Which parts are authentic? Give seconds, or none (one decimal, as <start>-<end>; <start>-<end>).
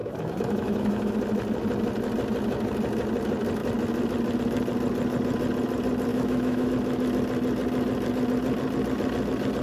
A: 1.1-6.1; 6.7-9.6